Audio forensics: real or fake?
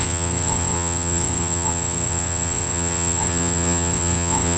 fake